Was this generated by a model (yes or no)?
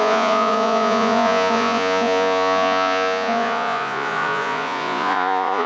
yes